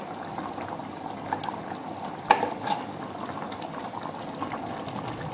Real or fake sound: real